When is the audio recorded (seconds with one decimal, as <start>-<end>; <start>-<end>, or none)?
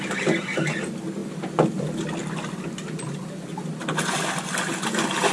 0.0-5.3